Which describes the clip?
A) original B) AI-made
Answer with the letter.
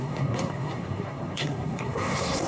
B